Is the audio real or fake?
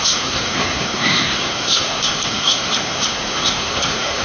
fake